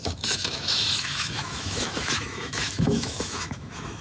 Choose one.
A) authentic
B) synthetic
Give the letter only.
B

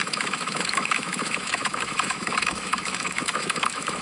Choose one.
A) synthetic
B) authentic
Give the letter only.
A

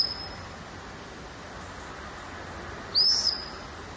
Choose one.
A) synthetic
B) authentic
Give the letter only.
B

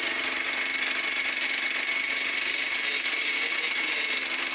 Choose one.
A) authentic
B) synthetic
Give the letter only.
A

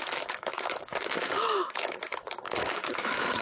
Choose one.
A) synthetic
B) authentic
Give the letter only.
A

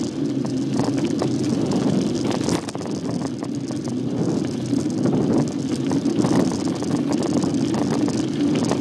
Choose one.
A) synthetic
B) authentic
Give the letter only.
B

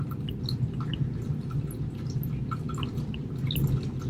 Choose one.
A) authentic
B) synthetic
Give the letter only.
A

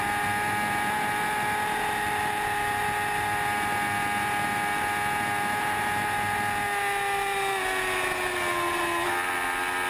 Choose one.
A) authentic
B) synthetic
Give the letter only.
A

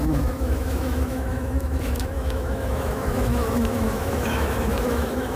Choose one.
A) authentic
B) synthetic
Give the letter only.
B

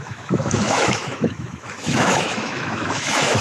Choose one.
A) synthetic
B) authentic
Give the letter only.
A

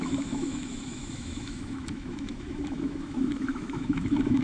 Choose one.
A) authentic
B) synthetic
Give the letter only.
B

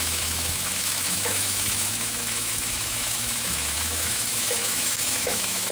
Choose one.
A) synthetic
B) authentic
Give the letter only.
A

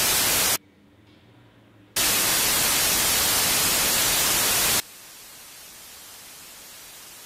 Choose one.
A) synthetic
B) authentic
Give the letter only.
B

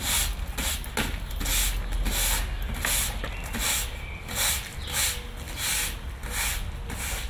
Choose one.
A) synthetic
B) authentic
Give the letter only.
B